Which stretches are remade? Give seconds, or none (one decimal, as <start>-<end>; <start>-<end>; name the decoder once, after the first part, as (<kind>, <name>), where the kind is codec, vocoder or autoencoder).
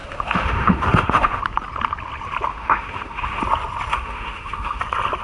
0.0-1.4 (autoencoder, DAC-VAE); 2.5-3.4; 3.9-4.8